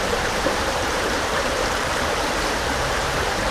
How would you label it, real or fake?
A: fake